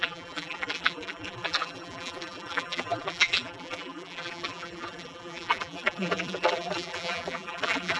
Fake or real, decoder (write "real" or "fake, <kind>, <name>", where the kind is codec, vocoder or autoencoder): fake, vocoder, BigVGAN v2